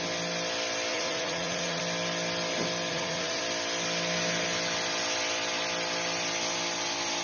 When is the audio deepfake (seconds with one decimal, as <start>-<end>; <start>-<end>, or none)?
0.9-1.8; 2.9-3.4